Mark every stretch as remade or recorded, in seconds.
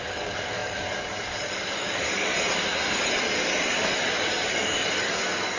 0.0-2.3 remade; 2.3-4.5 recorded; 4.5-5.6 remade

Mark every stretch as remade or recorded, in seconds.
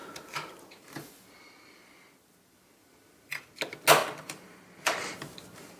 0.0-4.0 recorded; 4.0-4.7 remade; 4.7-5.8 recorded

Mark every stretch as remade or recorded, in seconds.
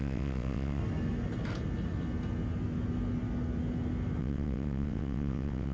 0.0-0.8 remade; 0.8-4.2 recorded; 4.2-5.7 remade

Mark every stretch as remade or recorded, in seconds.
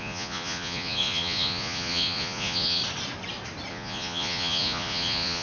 0.0-2.8 remade; 2.8-3.7 recorded; 3.7-5.4 remade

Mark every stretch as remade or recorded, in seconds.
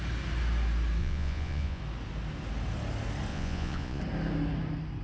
0.0-1.0 recorded; 1.0-1.8 remade; 1.8-3.3 recorded; 3.3-4.0 remade; 4.0-5.0 recorded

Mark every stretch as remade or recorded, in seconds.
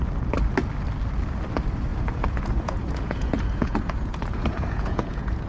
0.0-1.9 recorded; 1.9-5.5 remade